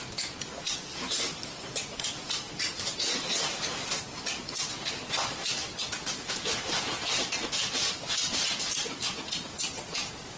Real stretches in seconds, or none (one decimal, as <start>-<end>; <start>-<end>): 0.0-10.4